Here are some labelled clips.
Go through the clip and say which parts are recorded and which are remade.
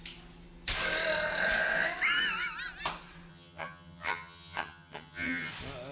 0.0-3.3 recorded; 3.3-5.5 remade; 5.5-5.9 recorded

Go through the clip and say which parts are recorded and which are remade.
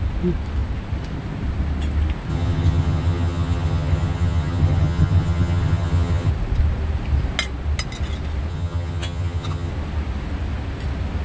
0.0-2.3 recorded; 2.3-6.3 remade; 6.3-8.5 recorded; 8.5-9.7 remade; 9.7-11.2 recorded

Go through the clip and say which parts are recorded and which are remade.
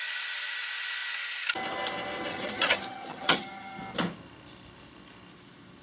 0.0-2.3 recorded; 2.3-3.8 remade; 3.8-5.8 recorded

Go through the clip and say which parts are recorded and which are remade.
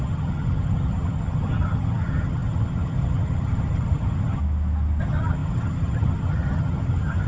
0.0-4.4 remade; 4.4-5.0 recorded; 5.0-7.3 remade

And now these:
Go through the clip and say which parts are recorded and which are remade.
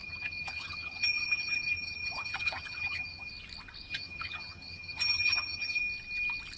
0.0-3.3 remade; 3.3-3.9 recorded; 3.9-5.8 remade; 5.8-6.6 recorded